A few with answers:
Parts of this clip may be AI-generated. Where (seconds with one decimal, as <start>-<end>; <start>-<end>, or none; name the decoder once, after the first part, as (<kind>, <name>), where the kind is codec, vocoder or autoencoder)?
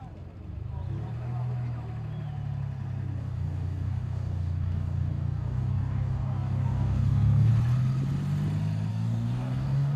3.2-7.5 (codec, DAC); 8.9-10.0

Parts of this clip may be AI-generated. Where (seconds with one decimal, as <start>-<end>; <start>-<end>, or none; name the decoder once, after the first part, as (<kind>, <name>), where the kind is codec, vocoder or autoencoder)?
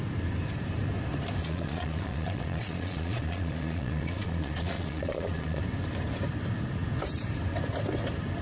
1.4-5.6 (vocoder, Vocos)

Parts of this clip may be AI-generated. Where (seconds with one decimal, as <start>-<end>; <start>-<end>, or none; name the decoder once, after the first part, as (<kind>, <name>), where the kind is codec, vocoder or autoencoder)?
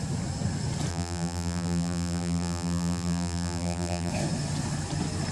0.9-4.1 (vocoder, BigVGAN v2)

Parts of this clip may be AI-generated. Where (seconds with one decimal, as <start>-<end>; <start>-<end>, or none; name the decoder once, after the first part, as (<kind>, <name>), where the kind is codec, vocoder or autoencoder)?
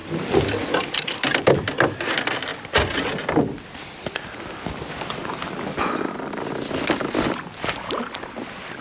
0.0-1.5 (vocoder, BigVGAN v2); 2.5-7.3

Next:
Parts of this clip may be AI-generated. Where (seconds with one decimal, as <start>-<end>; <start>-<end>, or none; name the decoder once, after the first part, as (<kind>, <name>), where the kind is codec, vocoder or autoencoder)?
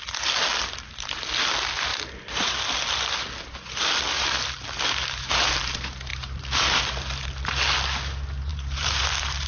4.1-5.5 (vocoder, BigVGAN v2); 6.1-6.8; 8.5-9.0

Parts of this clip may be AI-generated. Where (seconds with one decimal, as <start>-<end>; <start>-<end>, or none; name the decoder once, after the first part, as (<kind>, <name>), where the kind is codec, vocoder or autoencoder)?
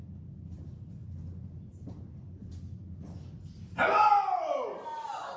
none